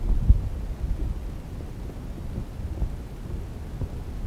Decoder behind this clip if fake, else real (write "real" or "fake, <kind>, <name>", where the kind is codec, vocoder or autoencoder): real